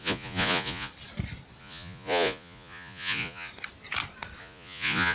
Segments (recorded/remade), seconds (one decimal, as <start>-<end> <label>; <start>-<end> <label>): 0.0-0.9 remade; 0.9-1.6 recorded; 1.6-3.5 remade; 3.5-4.4 recorded; 4.4-5.1 remade